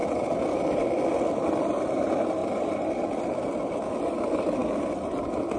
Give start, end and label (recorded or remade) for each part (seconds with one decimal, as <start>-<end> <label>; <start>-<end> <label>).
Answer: 0.0-1.5 remade; 1.5-4.6 recorded; 4.6-5.6 remade